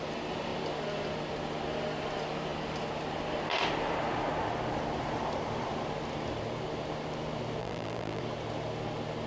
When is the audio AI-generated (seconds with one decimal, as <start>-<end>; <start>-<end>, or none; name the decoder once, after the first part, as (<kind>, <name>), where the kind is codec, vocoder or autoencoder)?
7.6-8.2 (vocoder, BigVGAN v2)